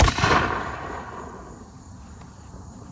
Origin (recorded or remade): recorded